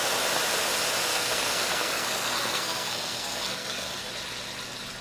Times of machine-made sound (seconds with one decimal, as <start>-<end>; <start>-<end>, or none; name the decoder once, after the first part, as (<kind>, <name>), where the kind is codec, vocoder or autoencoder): 1.1-4.1 (codec, SNAC)